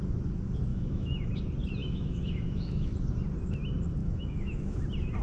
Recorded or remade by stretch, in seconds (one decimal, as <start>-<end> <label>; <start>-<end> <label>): 0.0-0.7 recorded; 0.7-1.3 remade; 1.3-1.8 recorded; 1.8-2.9 remade; 2.9-4.0 recorded; 4.0-4.8 remade; 4.8-5.2 recorded